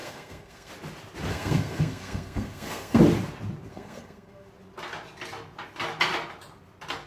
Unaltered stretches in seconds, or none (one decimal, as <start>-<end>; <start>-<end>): 0.7-1.3; 3.0-3.7; 4.5-7.1